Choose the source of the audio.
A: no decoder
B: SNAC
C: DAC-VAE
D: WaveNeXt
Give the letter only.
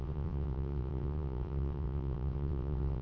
D